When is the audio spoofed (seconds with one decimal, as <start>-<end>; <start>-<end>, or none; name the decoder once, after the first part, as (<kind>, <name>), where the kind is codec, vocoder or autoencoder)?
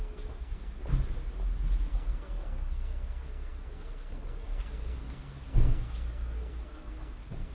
0.0-0.8 (codec, SNAC); 1.9-7.5